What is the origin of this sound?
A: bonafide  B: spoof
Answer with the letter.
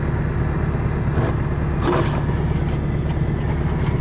A